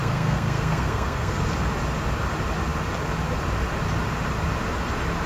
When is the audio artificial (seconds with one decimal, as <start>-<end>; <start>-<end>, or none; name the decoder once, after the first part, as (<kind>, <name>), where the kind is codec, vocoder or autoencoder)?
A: 0.0-1.4 (codec, SNAC)